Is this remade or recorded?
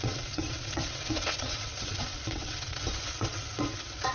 remade